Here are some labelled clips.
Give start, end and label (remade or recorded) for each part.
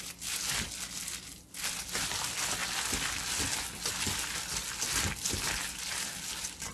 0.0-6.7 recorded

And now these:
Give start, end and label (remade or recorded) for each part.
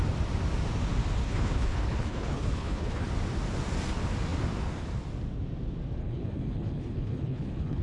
0.0-1.2 recorded; 1.2-3.1 remade; 3.1-6.0 recorded; 6.0-7.8 remade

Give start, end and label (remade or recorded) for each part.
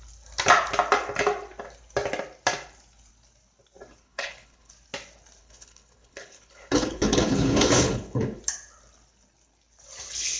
0.0-4.0 recorded; 4.0-4.7 remade; 4.7-5.4 recorded; 5.4-8.4 remade; 8.4-10.4 recorded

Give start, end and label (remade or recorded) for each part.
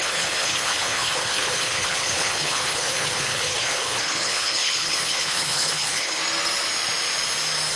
0.0-6.2 remade; 6.2-7.8 recorded